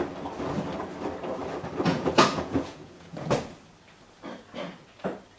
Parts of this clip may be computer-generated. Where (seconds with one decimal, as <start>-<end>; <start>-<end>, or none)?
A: 1.9-3.3